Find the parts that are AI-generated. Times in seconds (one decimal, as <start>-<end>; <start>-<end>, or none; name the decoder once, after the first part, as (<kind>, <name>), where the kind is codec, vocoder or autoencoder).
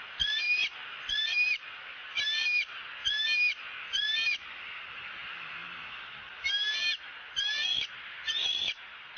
none